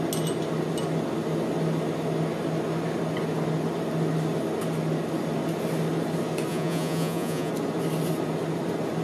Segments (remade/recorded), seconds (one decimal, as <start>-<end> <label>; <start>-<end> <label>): 0.0-6.5 recorded; 6.5-7.5 remade; 7.5-9.0 recorded